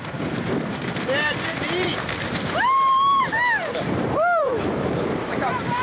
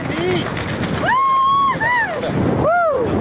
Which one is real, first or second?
second